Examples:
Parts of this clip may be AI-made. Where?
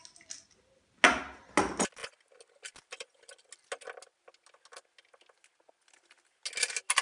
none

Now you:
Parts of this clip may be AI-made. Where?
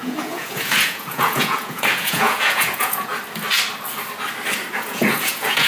0.0-3.1 (vocoder, Vocos); 4.7-5.7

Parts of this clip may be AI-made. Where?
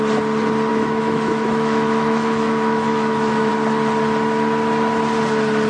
0.7-3.5 (autoencoder, DAC-VAE)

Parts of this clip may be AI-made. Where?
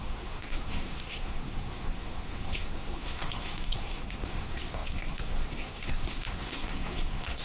0.0-7.4 (codec, SNAC)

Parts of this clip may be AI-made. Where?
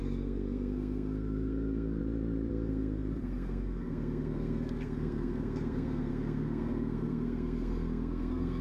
0.0-2.0 (codec, SNAC); 2.5-8.6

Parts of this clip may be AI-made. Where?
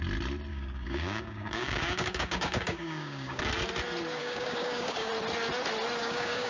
0.5-3.4 (codec, DAC); 4.2-5.1; 6.0-6.5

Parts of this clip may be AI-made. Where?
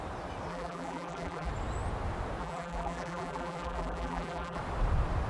0.5-1.5 (vocoder, BigVGAN v2); 2.4-4.6